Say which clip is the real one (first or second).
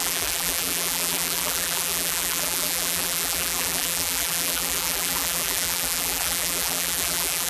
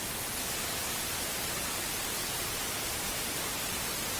second